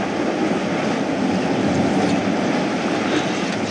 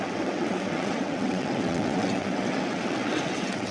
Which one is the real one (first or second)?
first